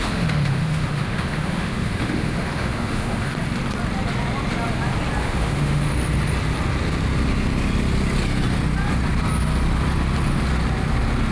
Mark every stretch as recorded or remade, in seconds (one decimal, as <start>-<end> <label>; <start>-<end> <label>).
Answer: 0.0-3.3 remade; 3.3-5.2 recorded; 5.2-5.8 remade; 5.8-11.3 recorded